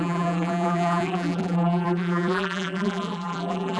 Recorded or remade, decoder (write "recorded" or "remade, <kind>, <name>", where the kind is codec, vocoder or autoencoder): remade, vocoder, BigVGAN v2